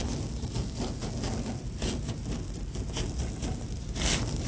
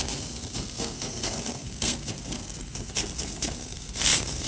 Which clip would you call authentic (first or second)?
first